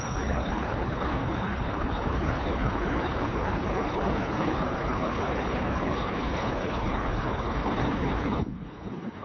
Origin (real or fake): fake